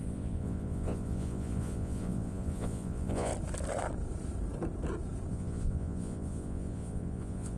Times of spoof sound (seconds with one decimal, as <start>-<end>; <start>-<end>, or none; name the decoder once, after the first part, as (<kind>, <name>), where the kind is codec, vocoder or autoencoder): 0.0-3.3 (vocoder, Vocos); 5.3-7.6